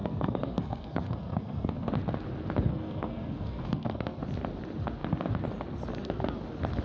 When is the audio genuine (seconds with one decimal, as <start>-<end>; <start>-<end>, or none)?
1.9-2.7; 4.2-6.8